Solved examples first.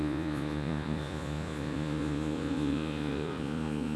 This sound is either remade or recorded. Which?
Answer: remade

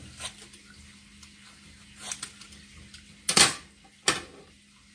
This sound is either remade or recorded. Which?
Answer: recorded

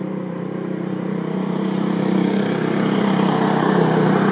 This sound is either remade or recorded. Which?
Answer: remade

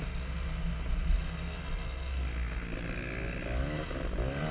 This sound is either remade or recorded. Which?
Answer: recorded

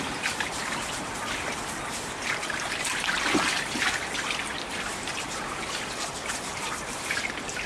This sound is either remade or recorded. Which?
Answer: recorded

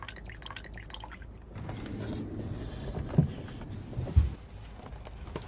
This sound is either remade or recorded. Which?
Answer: recorded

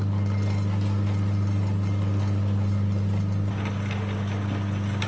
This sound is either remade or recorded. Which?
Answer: recorded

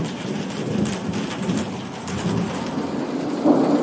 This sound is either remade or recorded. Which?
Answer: recorded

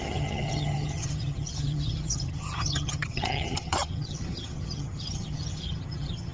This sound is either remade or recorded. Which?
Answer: remade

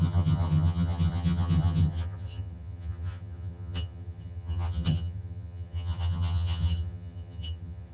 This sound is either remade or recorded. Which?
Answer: remade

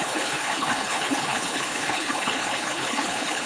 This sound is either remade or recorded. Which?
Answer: remade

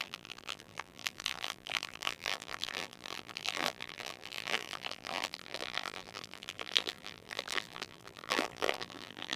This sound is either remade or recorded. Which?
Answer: remade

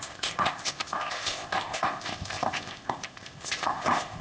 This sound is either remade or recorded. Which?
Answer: remade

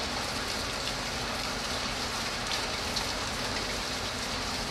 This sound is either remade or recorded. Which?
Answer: recorded